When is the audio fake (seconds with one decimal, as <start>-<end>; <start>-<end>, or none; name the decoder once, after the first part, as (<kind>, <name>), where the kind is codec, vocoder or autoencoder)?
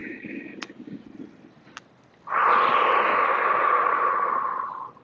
0.0-1.0 (codec, DAC); 3.1-4.0